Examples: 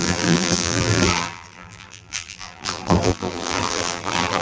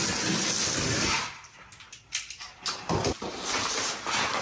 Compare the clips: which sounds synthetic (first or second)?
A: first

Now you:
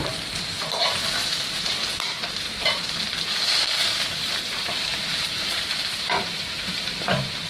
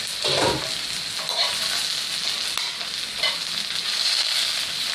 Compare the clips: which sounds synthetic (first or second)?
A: first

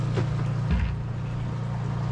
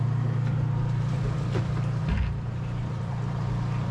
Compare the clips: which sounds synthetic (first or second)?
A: second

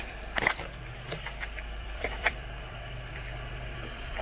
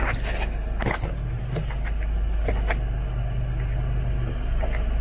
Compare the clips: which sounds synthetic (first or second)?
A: first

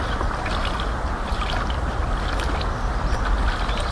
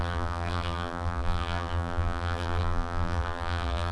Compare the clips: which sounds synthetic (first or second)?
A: second